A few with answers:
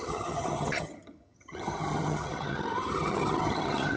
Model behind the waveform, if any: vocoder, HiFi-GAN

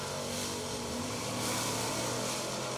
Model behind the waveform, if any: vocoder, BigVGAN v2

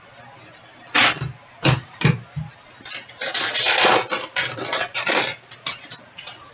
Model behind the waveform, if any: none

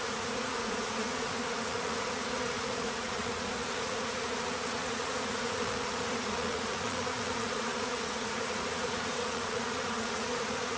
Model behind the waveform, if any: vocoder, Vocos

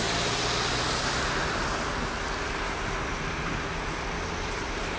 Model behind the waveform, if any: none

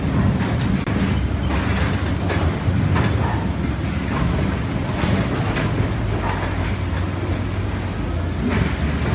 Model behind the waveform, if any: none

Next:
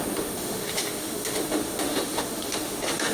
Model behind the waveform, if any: autoencoder, DAC-VAE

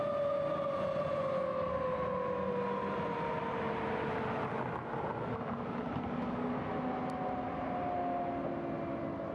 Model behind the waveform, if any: none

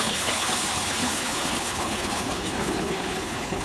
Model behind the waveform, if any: codec, HILCodec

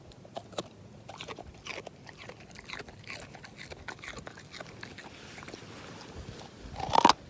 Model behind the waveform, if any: none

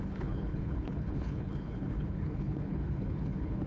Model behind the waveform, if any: codec, HILCodec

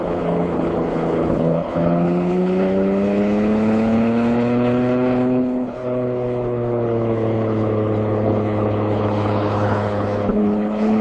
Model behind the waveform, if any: codec, HILCodec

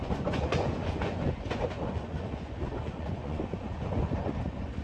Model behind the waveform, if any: vocoder, Vocos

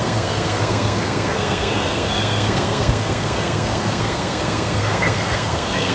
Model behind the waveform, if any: codec, SNAC